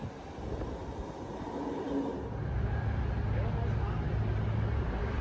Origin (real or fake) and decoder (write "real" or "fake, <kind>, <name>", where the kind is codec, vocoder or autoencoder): real